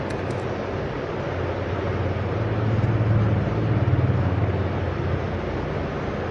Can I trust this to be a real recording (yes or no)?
yes